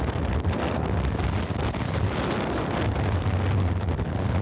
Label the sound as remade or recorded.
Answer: recorded